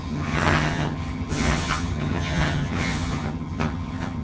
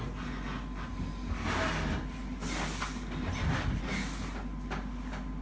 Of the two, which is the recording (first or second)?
second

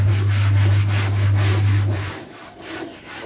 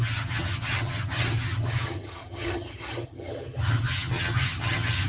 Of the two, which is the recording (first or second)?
first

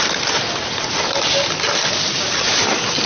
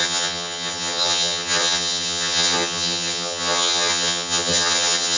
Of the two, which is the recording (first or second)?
first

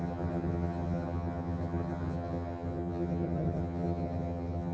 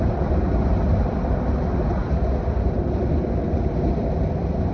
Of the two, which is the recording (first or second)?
second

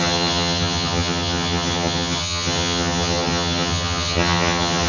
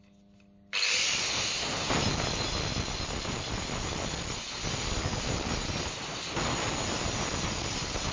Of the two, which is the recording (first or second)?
second